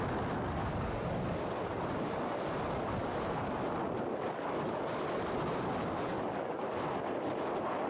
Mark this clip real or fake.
real